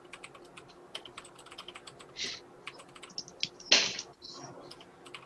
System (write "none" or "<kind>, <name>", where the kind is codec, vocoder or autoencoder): none